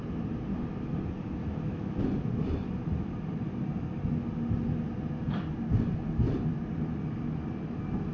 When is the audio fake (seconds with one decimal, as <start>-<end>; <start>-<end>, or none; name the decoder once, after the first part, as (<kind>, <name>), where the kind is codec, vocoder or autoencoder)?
1.4-2.0 (autoencoder, DAC-VAE)

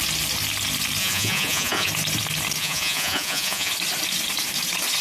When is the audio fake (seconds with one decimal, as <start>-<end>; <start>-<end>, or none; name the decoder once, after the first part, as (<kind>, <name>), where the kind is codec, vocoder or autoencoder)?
1.0-1.9 (vocoder, Vocos); 2.6-3.7